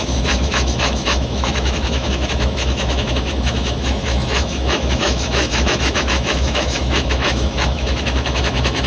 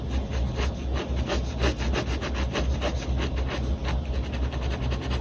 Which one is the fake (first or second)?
first